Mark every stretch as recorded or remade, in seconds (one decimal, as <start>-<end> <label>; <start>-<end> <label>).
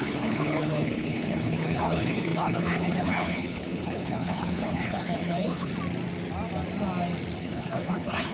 0.0-5.7 remade; 5.7-7.4 recorded; 7.4-8.3 remade